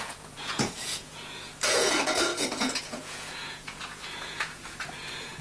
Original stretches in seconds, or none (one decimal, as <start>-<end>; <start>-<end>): none